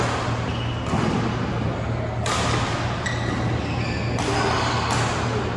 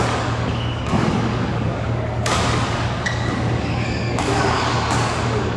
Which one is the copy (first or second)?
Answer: second